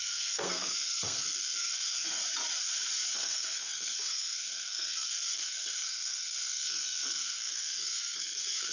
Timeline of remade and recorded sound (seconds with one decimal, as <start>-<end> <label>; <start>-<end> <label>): 0.0-2.2 remade; 2.2-3.1 recorded; 3.1-8.7 remade